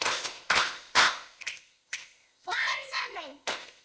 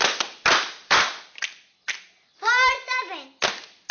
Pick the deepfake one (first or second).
first